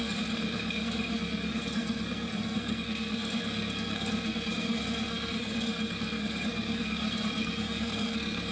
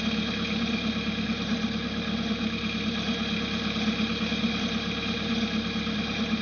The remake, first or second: first